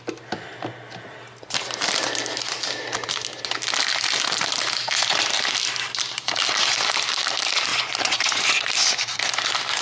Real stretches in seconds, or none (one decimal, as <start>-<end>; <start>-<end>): 0.0-7.7; 8.6-9.8